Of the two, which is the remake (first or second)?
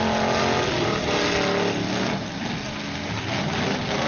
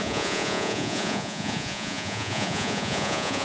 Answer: second